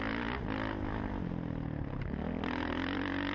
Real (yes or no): yes